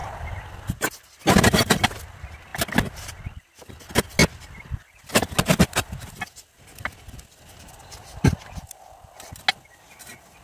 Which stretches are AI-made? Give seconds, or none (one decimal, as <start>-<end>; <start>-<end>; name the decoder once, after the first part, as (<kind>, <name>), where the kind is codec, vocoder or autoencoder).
none